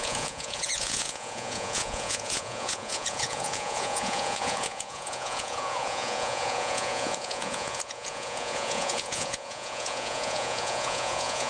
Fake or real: fake